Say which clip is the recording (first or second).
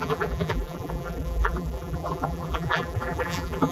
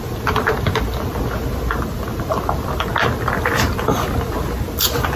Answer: second